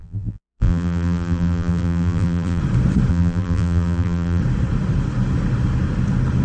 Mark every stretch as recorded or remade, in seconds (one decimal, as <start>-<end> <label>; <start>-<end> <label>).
0.0-2.6 remade; 2.6-3.1 recorded; 3.1-4.4 remade; 4.4-6.4 recorded

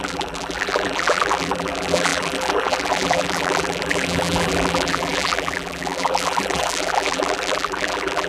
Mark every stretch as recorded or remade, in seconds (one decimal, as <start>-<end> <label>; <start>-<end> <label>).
0.0-8.3 remade

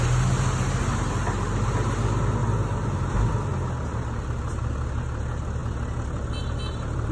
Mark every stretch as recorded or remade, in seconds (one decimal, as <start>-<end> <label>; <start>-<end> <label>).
0.0-7.1 recorded

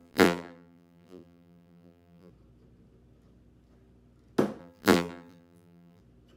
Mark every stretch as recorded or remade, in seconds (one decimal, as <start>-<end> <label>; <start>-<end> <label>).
0.0-2.3 remade; 2.3-4.6 recorded; 4.6-6.0 remade; 6.0-6.4 recorded

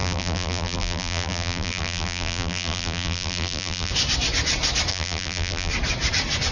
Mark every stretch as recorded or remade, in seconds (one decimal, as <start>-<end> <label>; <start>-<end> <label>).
0.0-3.9 remade; 3.9-4.9 recorded; 4.9-5.7 remade; 5.7-6.5 recorded

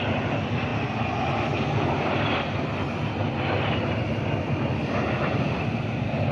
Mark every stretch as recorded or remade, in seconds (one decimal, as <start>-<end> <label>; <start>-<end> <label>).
0.0-6.3 recorded

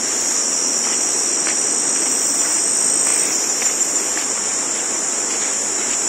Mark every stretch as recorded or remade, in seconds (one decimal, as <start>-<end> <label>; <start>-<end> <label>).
0.0-3.1 recorded; 3.1-6.1 remade